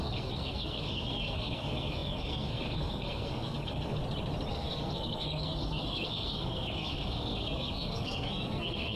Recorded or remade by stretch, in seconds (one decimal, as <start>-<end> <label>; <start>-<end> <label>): 0.0-4.0 remade; 4.0-4.5 recorded; 4.5-9.0 remade